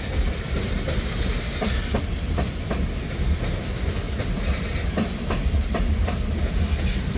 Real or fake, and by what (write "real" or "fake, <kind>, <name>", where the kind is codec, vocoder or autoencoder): real